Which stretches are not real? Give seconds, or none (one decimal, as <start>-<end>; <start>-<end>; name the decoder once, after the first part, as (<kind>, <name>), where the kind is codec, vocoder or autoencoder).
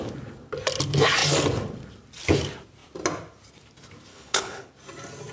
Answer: 4.1-4.7 (codec, HILCodec)